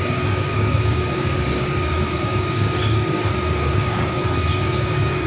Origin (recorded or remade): remade